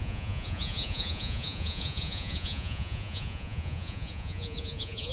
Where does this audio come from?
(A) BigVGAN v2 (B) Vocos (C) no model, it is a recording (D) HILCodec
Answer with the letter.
B